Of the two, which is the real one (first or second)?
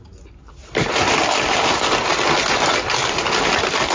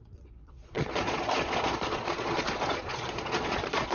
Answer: first